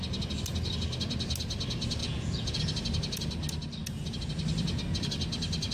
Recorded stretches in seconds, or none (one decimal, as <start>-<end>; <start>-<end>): 0.0-2.0; 2.6-5.7